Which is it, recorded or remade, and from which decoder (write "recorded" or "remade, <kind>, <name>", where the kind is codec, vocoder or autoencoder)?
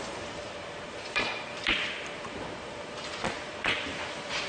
remade, vocoder, BigVGAN v2